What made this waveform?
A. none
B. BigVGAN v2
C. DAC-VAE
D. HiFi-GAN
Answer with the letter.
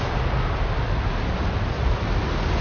A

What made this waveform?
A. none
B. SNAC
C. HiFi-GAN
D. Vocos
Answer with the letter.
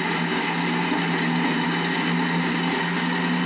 A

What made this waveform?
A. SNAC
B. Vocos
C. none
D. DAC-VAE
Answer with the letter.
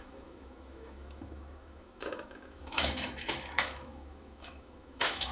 D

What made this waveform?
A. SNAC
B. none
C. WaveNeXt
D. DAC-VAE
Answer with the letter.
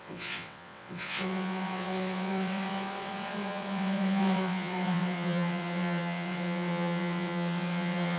C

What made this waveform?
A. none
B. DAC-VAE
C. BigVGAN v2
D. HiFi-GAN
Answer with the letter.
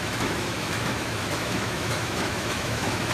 B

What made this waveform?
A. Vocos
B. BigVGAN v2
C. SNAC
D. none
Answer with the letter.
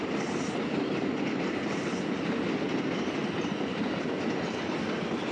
D